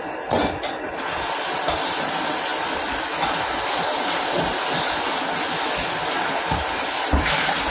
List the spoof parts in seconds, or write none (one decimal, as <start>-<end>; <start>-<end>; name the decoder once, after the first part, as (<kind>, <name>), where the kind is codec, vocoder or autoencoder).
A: none